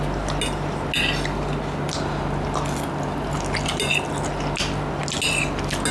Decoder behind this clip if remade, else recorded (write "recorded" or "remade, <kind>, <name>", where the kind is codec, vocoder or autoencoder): recorded